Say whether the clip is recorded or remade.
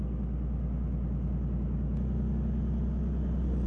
recorded